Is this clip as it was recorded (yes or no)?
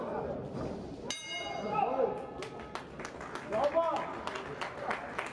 yes